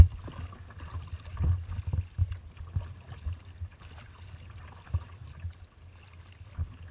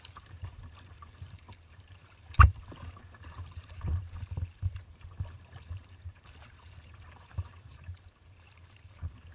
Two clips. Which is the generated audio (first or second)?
second